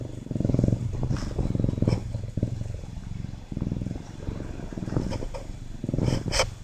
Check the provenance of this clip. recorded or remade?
recorded